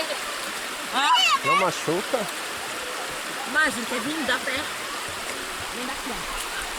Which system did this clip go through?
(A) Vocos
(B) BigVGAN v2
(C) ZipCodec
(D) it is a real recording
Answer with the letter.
B